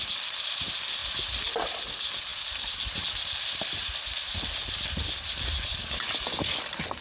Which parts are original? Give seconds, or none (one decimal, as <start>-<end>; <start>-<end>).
0.0-7.0